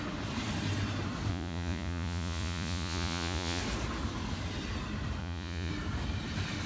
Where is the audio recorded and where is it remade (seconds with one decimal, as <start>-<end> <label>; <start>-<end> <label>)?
0.0-1.3 recorded; 1.3-3.6 remade; 3.6-5.2 recorded; 5.2-5.7 remade; 5.7-6.7 recorded